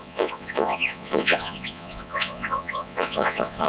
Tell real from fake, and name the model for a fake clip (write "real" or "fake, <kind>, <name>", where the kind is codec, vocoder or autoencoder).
fake, vocoder, Vocos